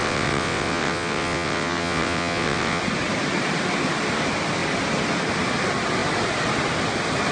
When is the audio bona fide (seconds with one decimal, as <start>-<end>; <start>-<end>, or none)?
2.8-7.3